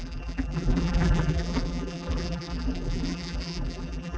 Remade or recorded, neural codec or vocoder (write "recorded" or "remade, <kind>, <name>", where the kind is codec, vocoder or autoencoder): remade, vocoder, BigVGAN v2